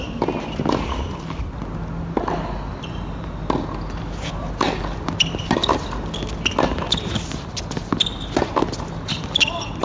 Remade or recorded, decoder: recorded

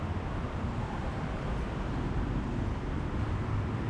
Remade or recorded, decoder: remade, vocoder, BigVGAN v2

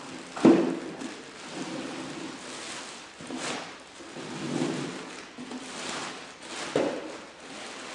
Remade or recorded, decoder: recorded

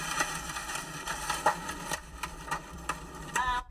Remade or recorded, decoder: remade, vocoder, BigVGAN v2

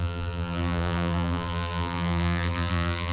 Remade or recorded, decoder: remade, vocoder, BigVGAN v2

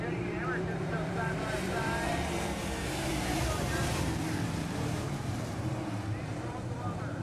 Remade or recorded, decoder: remade, vocoder, BigVGAN v2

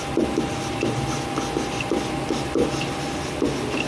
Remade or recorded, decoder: recorded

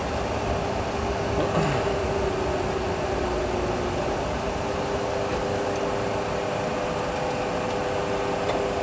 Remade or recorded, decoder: recorded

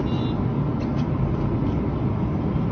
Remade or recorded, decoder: recorded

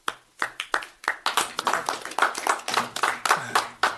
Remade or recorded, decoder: recorded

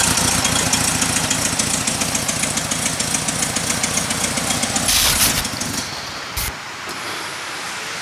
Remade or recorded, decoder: recorded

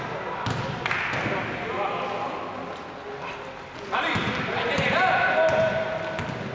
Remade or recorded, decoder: recorded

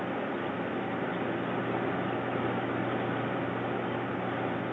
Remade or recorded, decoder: recorded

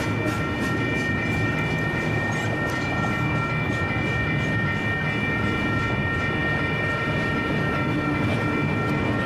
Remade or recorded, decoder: recorded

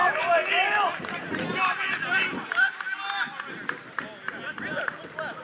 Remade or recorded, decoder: recorded